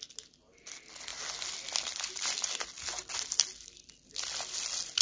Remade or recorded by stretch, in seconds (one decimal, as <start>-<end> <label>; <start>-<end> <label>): 0.0-5.0 recorded